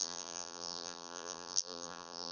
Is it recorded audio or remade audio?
remade